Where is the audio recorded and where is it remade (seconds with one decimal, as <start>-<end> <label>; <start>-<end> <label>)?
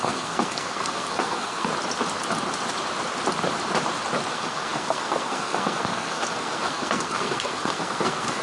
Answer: 0.0-1.7 remade; 1.7-4.3 recorded; 4.3-8.4 remade